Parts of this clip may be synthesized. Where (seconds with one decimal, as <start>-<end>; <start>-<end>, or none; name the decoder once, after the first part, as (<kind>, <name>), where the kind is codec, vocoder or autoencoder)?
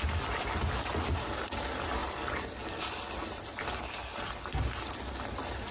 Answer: none